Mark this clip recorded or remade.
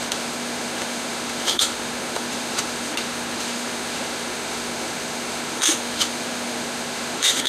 remade